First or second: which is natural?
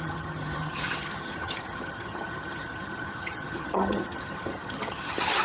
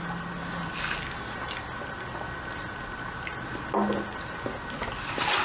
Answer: second